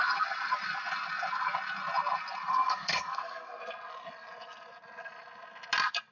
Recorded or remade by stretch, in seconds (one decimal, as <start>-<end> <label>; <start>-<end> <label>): 0.0-2.5 recorded; 2.5-3.6 remade; 3.6-6.1 recorded